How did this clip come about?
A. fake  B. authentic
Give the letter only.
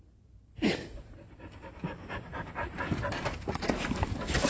B